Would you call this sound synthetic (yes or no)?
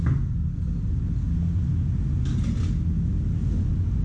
no